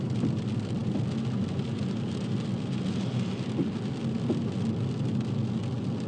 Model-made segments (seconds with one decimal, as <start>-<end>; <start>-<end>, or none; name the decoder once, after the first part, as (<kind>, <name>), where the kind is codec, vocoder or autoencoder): none